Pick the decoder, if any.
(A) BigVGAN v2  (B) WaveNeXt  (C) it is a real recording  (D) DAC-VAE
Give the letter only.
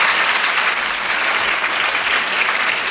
C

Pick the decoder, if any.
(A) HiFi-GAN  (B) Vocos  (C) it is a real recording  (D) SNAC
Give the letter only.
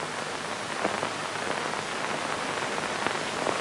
C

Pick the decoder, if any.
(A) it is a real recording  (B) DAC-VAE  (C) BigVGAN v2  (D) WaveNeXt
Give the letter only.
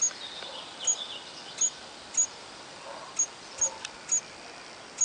A